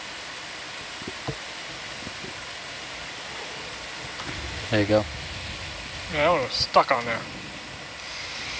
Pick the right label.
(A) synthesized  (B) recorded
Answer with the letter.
A